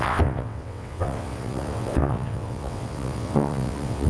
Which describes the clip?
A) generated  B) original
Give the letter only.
A